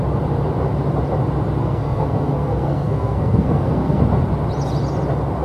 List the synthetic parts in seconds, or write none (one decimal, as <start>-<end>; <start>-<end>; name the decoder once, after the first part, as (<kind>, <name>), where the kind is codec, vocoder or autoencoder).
1.6-4.0 (codec, SNAC)